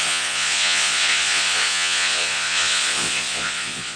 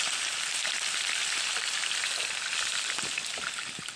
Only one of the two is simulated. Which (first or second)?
first